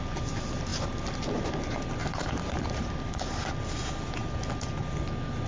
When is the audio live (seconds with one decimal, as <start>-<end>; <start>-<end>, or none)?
0.0-2.0; 2.9-5.5